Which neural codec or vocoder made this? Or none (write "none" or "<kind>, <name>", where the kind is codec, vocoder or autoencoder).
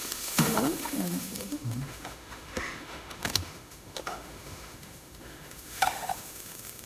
autoencoder, DAC-VAE